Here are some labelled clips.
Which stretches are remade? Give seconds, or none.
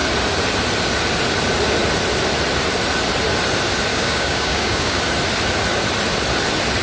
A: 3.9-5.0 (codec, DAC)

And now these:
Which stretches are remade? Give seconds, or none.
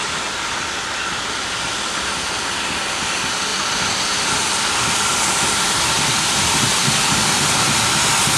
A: none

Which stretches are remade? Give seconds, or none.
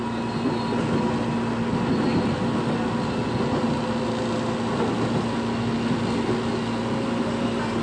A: none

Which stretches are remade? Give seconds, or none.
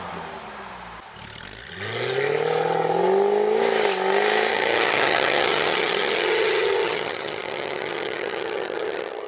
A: 4.5-9.3 (vocoder, HiFi-GAN)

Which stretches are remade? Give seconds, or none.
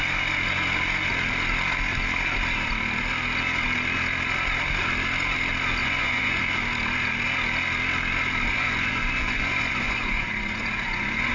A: 5.8-6.4 (vocoder, Vocos); 8.5-11.3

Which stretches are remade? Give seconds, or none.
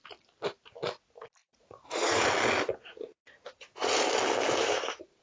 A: 1.4-2.3 (vocoder, Vocos); 2.9-3.9